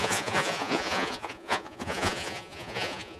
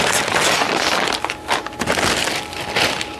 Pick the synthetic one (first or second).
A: first